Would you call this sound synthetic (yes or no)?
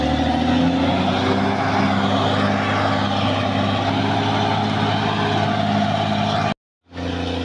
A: no